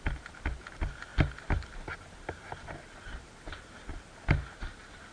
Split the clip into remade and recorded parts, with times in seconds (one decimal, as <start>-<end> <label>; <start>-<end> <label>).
0.0-5.1 recorded